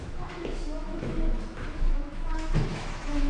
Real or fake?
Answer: fake